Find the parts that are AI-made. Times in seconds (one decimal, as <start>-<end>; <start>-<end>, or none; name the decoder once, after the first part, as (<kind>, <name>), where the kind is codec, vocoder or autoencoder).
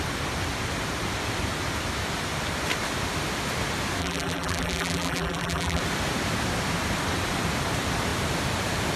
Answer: 4.0-5.8 (vocoder, BigVGAN v2)